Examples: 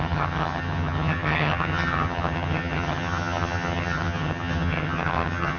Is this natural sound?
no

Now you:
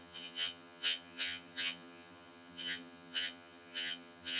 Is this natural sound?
no